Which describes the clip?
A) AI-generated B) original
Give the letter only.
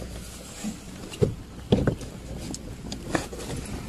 B